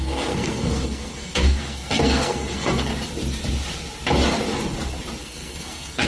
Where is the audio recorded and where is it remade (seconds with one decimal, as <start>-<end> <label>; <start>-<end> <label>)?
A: 0.0-2.9 remade; 2.9-5.2 recorded; 5.2-6.1 remade